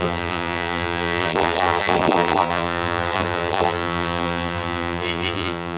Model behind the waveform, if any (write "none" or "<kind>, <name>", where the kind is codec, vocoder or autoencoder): vocoder, BigVGAN v2